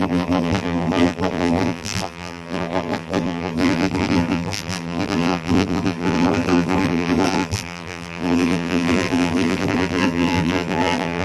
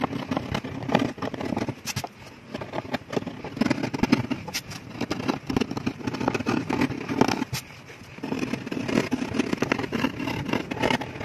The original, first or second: second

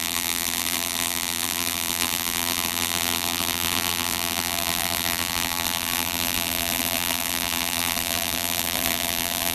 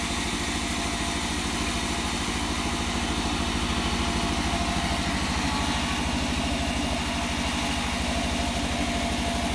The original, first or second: second